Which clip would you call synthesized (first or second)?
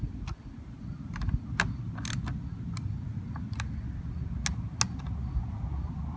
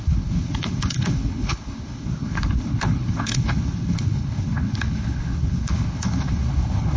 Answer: second